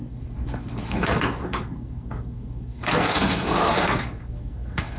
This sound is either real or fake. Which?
fake